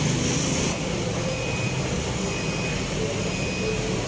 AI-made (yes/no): no